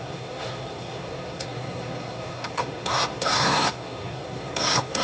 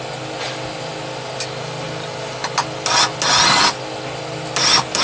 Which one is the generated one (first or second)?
first